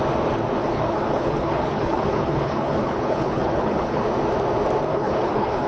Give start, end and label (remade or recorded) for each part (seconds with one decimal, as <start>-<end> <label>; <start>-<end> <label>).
0.0-0.6 recorded; 0.6-4.0 remade; 4.0-4.9 recorded; 4.9-5.7 remade